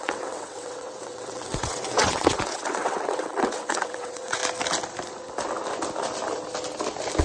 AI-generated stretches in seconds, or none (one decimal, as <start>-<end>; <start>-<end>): 0.0-4.4